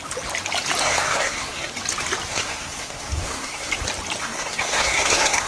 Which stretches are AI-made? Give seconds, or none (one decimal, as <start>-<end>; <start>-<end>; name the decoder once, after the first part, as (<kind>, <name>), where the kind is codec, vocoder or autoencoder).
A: 0.8-1.7 (codec, SNAC); 2.3-3.7; 4.2-5.5